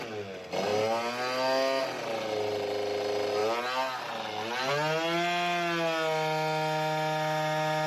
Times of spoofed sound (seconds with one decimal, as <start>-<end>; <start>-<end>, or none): none